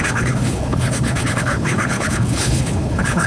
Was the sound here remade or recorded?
remade